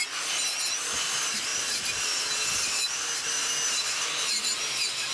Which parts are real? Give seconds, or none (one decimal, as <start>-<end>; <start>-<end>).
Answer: 0.0-5.1